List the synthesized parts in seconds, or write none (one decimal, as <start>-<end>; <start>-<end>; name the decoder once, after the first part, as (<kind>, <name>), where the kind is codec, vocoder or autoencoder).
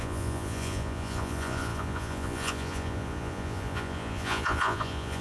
0.0-5.2 (vocoder, Vocos)